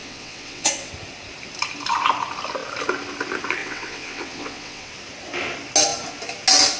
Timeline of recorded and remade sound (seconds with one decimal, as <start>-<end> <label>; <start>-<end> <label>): 0.0-0.9 remade; 0.9-3.6 recorded; 3.6-4.9 remade; 4.9-6.8 recorded